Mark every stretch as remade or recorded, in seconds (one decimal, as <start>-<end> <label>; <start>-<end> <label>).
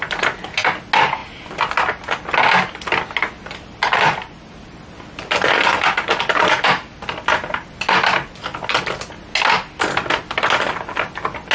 0.0-11.5 recorded